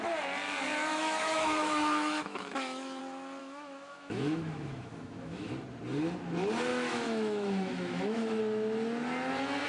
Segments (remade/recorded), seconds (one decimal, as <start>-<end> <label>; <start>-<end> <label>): 0.0-0.9 recorded; 0.9-3.0 remade; 3.0-3.4 recorded; 3.4-5.5 remade; 5.5-6.7 recorded; 6.7-8.4 remade; 8.4-9.7 recorded